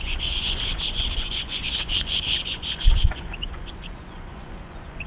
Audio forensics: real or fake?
fake